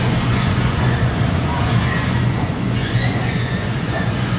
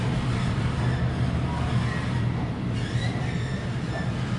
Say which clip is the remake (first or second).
first